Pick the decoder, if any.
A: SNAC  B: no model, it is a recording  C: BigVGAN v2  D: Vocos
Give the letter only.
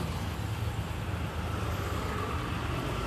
B